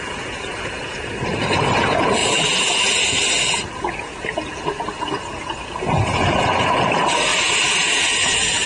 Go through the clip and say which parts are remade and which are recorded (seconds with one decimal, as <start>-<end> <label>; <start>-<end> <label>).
0.0-8.7 remade